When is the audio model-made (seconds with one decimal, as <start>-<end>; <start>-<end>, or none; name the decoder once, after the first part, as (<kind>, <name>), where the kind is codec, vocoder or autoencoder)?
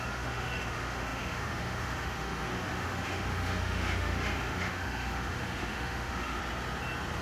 0.0-6.4 (autoencoder, DAC-VAE)